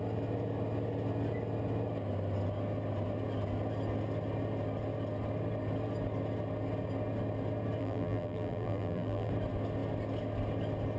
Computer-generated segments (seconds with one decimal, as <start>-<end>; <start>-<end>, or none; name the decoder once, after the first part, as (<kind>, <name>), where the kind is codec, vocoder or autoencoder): 7.8-9.3 (vocoder, BigVGAN v2)